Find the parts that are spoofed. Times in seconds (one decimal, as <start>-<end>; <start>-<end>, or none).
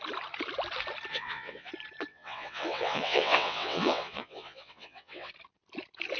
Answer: 1.1-1.7; 2.1-5.3